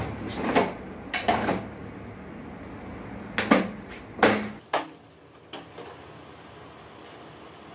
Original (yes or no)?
yes